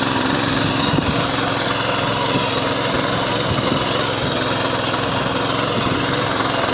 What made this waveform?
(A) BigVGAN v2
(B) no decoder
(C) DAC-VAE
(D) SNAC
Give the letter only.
B